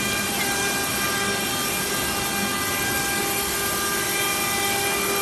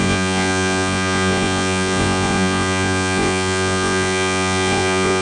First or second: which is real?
first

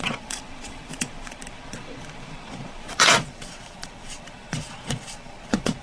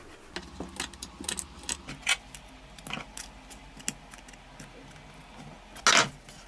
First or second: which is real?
second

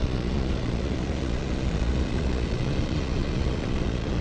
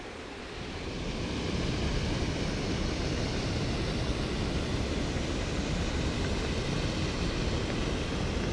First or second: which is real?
second